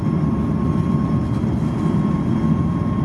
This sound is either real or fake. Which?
real